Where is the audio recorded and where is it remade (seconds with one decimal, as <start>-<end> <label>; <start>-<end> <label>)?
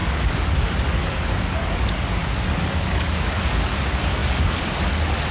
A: 0.0-5.3 remade